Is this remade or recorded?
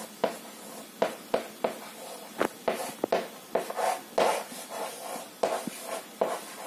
recorded